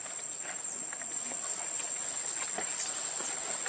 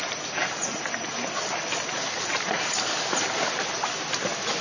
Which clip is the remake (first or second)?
second